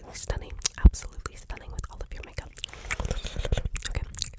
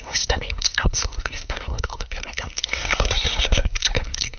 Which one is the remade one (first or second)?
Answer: second